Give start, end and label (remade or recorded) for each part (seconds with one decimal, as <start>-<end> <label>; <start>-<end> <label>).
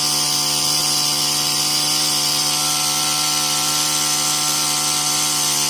0.0-5.7 recorded